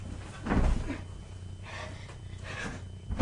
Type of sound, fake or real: real